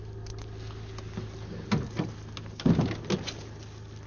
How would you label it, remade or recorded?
recorded